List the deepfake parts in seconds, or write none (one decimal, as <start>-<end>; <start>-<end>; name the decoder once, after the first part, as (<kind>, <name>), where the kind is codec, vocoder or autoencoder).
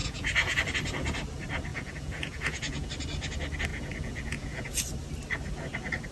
0.0-0.6 (vocoder, Vocos); 1.7-2.9; 3.7-4.7